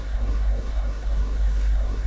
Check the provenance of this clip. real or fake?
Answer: fake